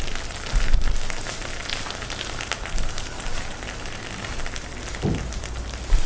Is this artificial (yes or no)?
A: no